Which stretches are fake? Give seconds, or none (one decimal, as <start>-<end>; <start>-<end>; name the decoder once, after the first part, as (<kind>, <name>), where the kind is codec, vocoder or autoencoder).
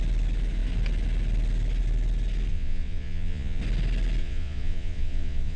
2.5-3.6 (vocoder, Vocos); 4.2-5.6